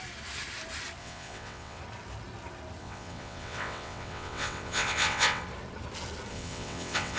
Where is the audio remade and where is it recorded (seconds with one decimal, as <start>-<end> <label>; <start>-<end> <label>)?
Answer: 0.0-1.0 recorded; 1.0-1.8 remade; 1.8-2.8 recorded; 2.8-5.4 remade; 5.4-6.3 recorded; 6.3-7.2 remade